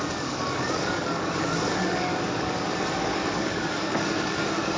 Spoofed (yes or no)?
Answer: yes